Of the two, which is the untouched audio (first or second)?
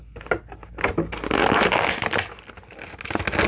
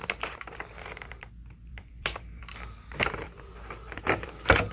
first